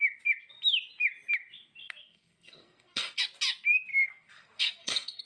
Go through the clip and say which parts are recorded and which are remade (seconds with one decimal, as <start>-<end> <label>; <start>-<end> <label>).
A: 0.0-2.0 recorded; 2.0-3.2 remade; 3.2-3.9 recorded; 3.9-5.2 remade